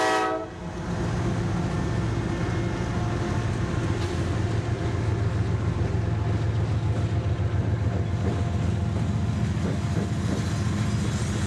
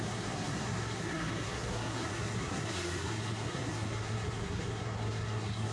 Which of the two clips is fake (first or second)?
second